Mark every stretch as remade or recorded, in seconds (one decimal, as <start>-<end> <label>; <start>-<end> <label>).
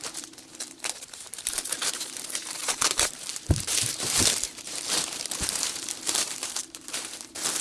0.0-7.6 remade